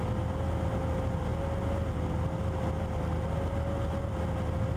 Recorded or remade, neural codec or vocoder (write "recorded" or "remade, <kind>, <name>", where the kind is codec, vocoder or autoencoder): recorded